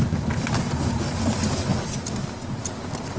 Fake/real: real